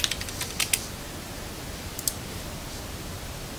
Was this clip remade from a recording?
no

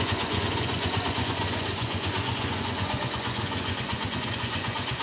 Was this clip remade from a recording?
yes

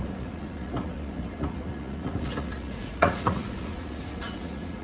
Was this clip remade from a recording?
yes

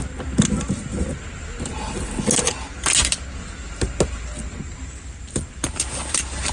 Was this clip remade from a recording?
no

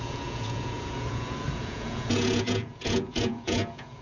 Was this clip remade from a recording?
yes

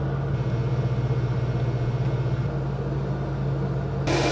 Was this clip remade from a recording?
no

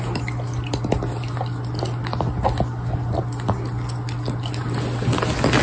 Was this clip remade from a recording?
no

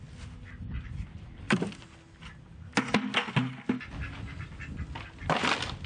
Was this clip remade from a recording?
no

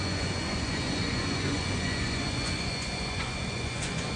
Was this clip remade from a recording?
yes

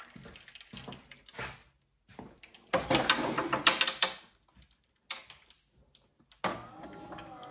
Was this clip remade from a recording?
no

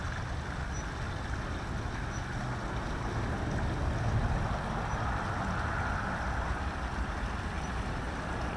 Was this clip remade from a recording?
no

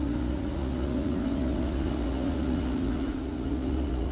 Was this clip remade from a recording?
yes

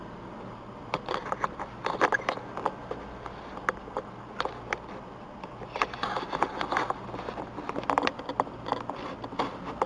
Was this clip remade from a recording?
no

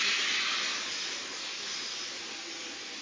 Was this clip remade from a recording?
no